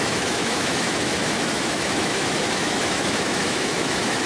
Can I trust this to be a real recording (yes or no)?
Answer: no